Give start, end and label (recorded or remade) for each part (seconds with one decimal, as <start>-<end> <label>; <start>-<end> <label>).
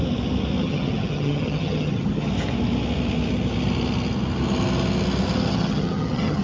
0.0-0.6 recorded; 0.6-2.3 remade; 2.3-5.5 recorded; 5.5-6.4 remade